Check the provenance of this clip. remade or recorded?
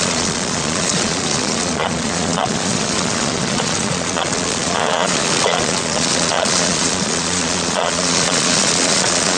remade